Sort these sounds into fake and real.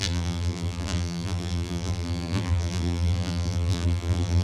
fake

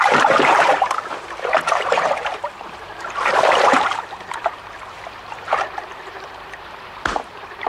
fake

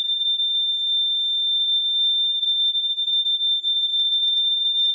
real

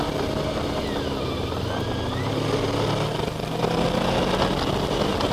real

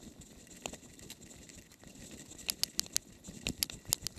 real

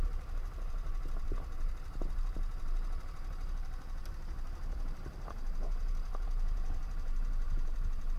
fake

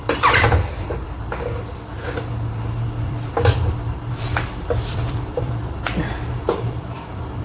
fake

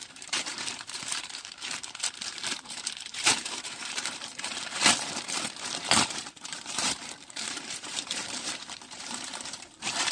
fake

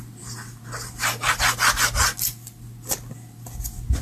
real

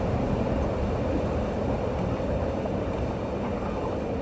real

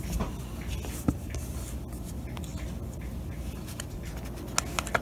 real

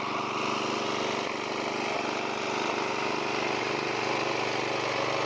real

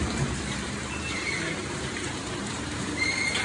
fake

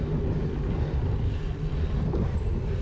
real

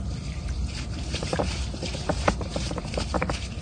fake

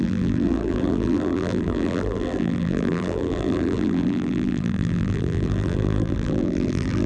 fake